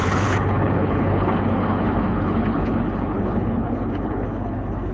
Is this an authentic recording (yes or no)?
no